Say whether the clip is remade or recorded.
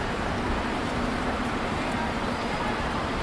remade